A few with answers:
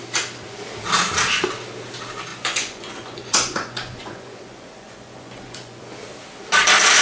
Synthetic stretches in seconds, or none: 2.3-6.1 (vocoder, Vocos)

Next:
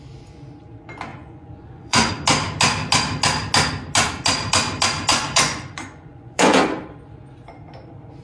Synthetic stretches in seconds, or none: 1.1-2.1 (vocoder, Vocos); 5.1-6.6

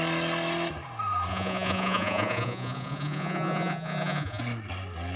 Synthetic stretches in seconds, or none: 1.3-4.4 (vocoder, Vocos)

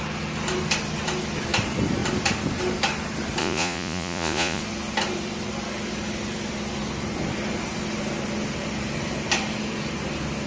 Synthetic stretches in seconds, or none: 3.4-4.6 (vocoder, Vocos)

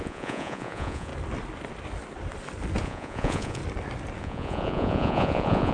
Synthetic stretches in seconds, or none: 0.0-1.1 (vocoder, Vocos); 2.8-3.6; 4.2-5.7

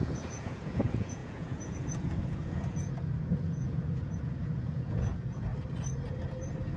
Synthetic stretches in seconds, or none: 0.0-5.5 (vocoder, Vocos)

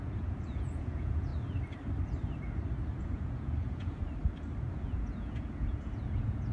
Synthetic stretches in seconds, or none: 0.0-1.3 (vocoder, Vocos); 3.0-4.0; 4.7-6.5

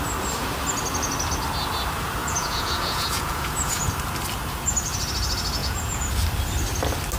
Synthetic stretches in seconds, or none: 2.2-3.9 (vocoder, Vocos); 5.6-6.1